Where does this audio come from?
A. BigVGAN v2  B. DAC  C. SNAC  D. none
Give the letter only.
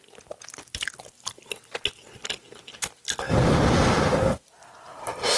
D